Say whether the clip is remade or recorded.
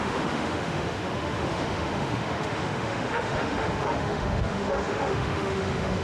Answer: remade